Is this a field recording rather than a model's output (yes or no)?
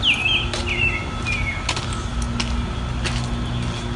yes